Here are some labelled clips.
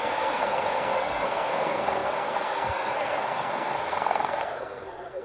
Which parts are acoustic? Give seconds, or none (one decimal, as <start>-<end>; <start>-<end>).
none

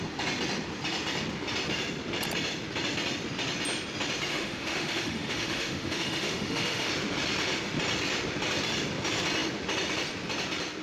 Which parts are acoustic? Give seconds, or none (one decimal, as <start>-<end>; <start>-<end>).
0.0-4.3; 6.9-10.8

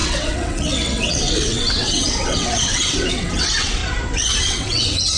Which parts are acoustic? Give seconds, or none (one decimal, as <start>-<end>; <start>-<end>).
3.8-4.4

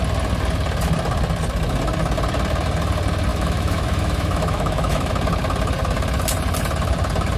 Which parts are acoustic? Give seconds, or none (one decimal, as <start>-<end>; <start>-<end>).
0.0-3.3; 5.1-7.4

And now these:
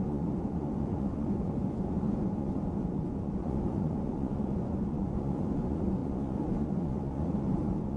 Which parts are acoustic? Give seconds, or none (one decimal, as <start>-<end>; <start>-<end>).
none